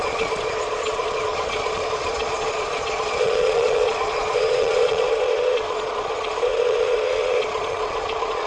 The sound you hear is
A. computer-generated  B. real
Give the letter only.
A